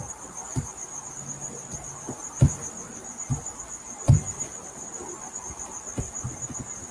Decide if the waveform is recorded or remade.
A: recorded